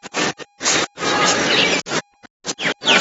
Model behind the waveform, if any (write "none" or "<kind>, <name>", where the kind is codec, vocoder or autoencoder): none